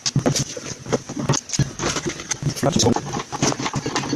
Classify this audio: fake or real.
real